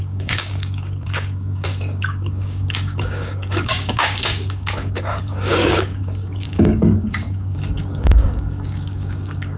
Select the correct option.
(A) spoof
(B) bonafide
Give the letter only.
A